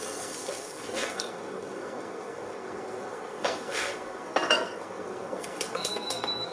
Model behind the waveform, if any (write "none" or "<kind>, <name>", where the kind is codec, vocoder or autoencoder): codec, SNAC